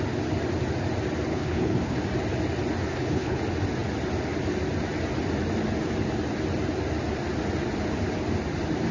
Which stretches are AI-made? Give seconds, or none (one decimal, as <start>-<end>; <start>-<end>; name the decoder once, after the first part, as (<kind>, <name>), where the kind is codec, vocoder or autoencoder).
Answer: 1.3-2.0 (codec, HILCodec); 2.9-3.4